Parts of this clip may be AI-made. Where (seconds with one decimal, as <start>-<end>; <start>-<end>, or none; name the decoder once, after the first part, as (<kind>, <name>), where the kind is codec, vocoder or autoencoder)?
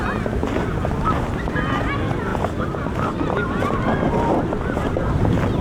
none